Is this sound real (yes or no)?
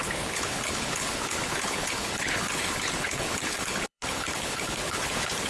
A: no